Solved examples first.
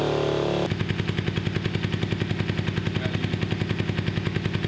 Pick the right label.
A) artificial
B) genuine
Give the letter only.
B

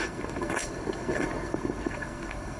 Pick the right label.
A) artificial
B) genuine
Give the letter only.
A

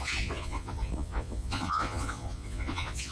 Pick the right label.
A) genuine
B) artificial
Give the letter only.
B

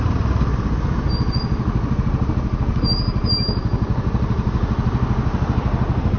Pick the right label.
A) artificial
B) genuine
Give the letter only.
B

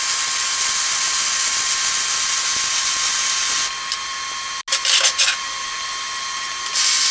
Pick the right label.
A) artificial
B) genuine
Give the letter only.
B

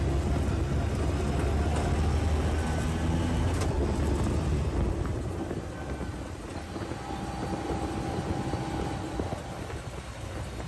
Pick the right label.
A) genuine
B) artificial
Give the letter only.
A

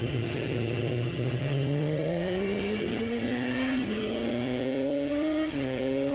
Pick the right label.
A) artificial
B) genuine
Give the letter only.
A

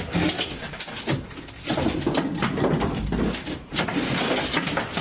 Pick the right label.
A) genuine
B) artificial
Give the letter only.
A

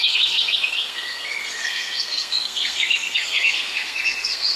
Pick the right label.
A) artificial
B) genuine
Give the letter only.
A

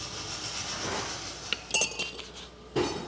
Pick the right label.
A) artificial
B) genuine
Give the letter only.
B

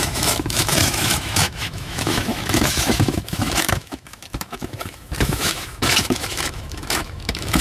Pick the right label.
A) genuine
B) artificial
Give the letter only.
B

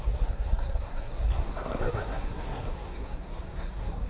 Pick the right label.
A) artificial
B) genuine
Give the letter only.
A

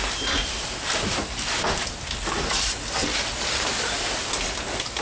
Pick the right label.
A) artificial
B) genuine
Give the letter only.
B